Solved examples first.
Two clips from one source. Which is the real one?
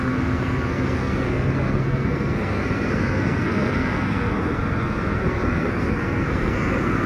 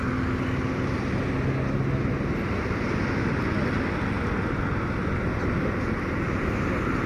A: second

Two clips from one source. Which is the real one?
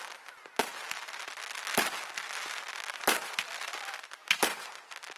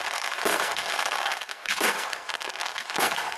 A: first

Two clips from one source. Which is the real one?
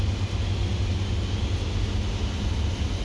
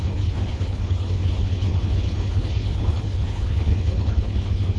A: first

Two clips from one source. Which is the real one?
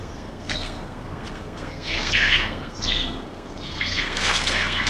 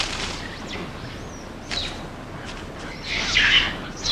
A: second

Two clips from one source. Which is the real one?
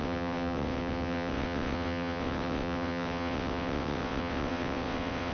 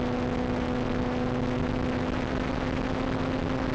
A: second